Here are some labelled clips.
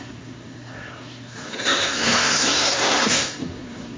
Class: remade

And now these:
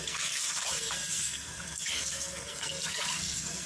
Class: remade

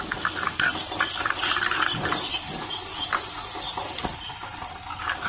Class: recorded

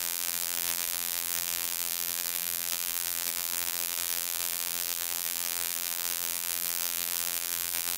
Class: remade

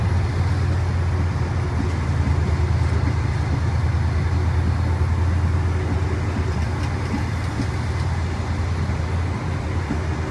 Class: recorded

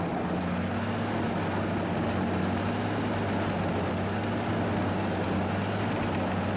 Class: recorded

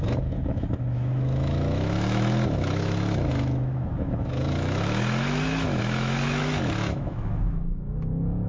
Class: remade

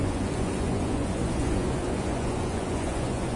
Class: remade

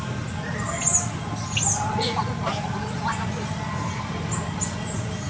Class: recorded